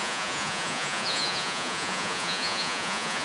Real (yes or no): no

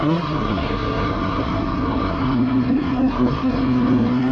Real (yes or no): no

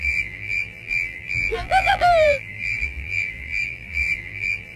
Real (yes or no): no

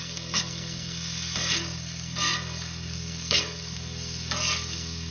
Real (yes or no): no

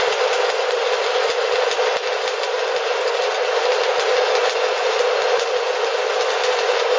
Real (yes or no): yes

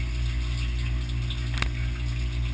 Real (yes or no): yes